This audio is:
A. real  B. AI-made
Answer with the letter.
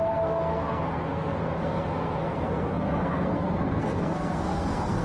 B